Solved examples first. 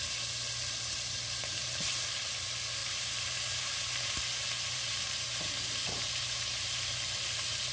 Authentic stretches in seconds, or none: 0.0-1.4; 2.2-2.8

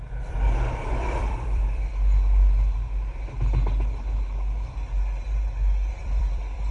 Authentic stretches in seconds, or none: 1.9-5.9

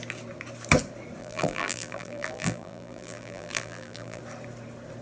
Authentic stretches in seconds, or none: 0.0-1.2; 4.2-5.0

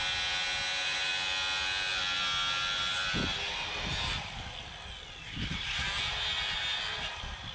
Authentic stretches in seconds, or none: 0.0-7.5

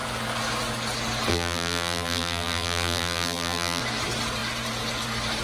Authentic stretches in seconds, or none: 0.0-1.3; 3.8-5.4

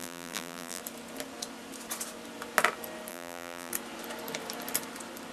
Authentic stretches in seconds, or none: 0.8-3.1; 3.7-5.3

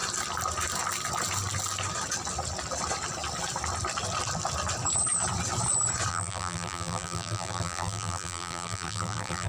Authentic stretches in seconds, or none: 0.0-6.1